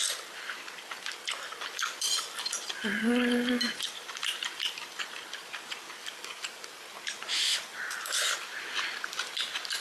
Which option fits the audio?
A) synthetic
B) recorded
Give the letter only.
A